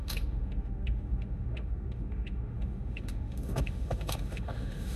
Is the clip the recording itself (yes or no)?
no